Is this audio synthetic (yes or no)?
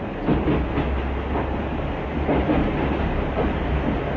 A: no